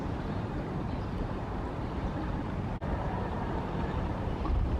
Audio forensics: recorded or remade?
remade